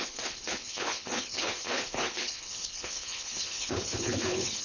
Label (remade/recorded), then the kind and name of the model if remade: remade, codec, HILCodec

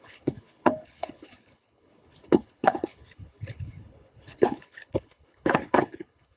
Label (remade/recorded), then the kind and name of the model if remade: remade, codec, HILCodec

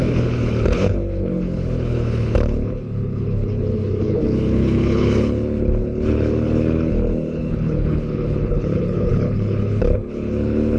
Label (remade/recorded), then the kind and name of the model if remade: remade, codec, HILCodec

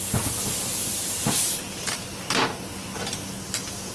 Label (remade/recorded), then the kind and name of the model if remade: recorded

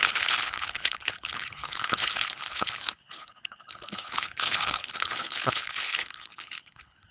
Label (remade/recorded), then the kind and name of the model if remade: remade, codec, HILCodec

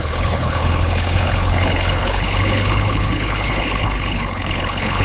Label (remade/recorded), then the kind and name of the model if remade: remade, codec, HILCodec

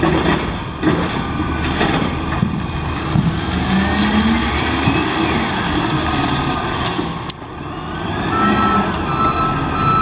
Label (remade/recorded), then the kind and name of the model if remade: recorded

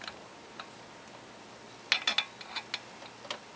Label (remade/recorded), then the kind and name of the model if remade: recorded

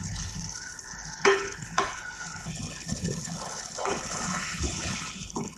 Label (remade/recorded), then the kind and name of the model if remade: remade, codec, HILCodec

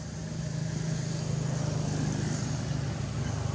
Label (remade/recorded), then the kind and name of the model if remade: recorded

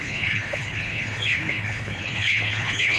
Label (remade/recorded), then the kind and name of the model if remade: remade, codec, HILCodec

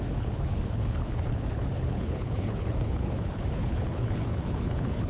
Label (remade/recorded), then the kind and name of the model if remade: remade, codec, HILCodec